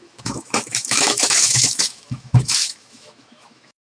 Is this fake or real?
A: fake